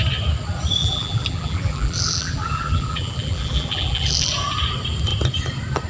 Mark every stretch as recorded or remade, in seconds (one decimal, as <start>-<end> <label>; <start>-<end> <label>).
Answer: 0.0-0.8 recorded; 0.8-4.3 remade; 4.3-5.9 recorded